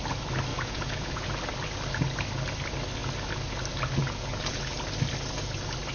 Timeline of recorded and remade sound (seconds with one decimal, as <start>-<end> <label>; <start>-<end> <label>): 0.0-0.5 recorded; 0.5-1.3 remade; 1.3-4.0 recorded; 4.0-4.6 remade; 4.6-5.9 recorded